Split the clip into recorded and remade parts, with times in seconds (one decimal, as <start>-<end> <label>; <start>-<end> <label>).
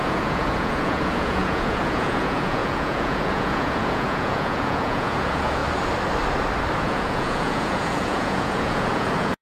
0.0-5.6 remade; 5.6-6.8 recorded; 6.8-9.4 remade